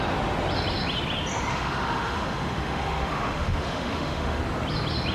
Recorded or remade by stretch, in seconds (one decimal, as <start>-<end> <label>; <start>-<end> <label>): 0.0-1.5 recorded; 1.5-4.4 remade; 4.4-5.1 recorded